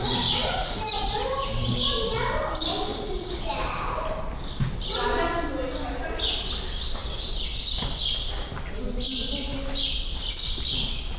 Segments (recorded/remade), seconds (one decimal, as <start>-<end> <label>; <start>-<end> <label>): 0.0-0.4 recorded; 0.4-1.2 remade; 1.2-2.9 recorded; 2.9-3.5 remade; 3.5-11.2 recorded